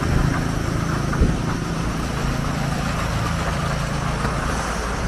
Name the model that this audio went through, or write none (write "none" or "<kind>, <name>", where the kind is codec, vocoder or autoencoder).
none